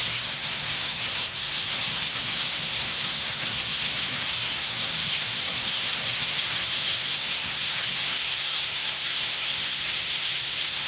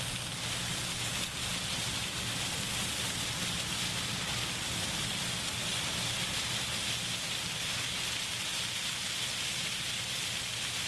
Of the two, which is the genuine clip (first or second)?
second